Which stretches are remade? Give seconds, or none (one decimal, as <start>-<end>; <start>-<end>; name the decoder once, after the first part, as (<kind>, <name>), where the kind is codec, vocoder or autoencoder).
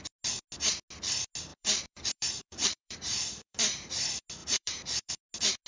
1.5-3.9 (vocoder, BigVGAN v2); 4.4-5.1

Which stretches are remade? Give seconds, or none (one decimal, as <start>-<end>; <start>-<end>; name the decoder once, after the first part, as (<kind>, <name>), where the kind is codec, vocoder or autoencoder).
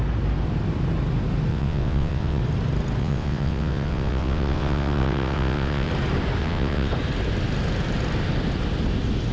1.5-2.4 (vocoder, WaveNeXt); 3.0-5.9; 6.4-6.9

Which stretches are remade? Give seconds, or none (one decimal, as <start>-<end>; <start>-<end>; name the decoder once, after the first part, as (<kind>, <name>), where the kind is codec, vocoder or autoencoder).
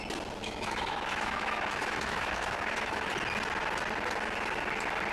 0.4-3.1 (autoencoder, DAC-VAE)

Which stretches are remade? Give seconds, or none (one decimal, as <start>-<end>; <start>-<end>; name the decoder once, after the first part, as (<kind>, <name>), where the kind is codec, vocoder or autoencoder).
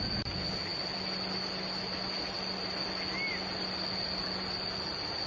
none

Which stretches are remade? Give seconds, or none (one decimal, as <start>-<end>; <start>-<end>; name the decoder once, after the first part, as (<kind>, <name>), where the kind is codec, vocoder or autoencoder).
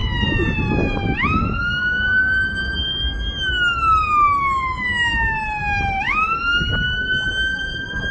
none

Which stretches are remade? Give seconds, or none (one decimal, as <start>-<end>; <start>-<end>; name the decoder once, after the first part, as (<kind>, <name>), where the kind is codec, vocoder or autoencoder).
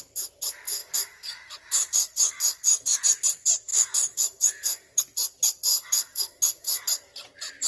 0.8-3.0 (autoencoder, DAC-VAE); 3.7-5.0; 5.7-6.8